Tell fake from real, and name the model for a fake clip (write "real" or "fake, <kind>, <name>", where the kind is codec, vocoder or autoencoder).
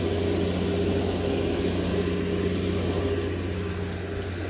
real